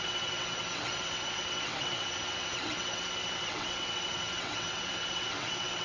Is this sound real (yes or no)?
no